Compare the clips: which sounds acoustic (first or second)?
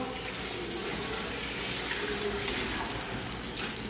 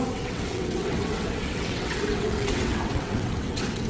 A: first